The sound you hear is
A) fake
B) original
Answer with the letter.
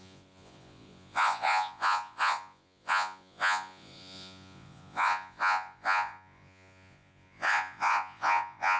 A